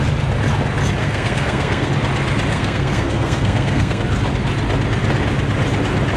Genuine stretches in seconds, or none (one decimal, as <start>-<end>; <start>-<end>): 0.0-1.0; 1.9-2.5; 4.0-6.2